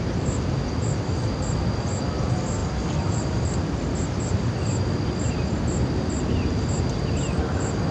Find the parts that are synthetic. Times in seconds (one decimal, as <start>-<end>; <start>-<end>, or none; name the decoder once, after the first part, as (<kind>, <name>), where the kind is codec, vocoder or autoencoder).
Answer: 2.6-4.1 (vocoder, BigVGAN v2)